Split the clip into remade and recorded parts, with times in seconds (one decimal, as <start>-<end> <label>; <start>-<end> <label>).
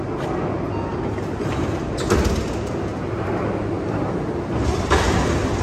0.0-5.6 recorded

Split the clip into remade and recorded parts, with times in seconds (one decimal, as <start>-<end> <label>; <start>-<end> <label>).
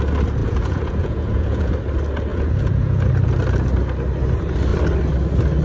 0.0-0.4 recorded; 0.4-1.7 remade; 1.7-2.3 recorded; 2.3-3.1 remade; 3.1-5.6 recorded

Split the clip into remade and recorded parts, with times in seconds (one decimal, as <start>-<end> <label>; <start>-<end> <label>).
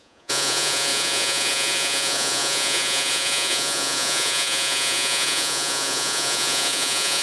0.0-7.2 remade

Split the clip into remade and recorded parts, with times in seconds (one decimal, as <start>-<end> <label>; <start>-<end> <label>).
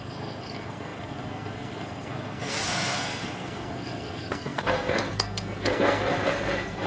0.0-6.9 remade